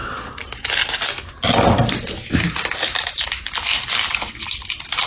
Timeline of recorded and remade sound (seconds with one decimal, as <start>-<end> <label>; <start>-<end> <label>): 0.0-5.1 recorded